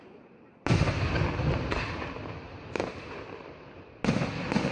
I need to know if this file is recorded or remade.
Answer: recorded